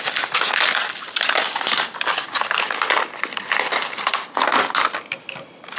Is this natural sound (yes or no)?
yes